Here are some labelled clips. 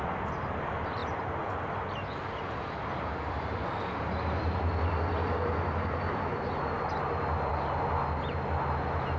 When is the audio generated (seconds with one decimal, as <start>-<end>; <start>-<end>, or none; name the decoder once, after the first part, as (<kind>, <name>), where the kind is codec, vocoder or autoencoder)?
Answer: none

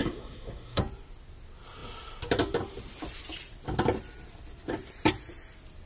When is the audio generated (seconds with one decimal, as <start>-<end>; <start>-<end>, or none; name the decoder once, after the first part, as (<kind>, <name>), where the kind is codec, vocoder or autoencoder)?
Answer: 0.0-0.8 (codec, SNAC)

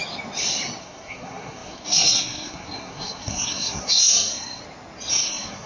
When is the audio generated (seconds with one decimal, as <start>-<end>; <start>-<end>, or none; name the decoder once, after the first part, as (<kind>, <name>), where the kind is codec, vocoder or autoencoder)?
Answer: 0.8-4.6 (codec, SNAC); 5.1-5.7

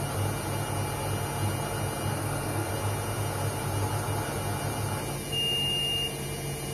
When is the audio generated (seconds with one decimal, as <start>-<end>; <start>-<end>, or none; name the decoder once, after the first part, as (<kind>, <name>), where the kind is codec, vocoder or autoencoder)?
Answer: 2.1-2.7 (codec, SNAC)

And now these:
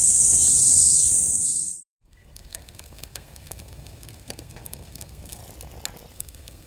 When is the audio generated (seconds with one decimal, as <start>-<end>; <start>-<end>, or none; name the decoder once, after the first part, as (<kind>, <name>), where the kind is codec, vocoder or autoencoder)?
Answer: 0.0-5.4 (codec, SNAC); 6.1-6.7